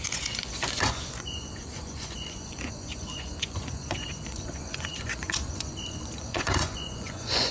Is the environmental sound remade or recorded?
remade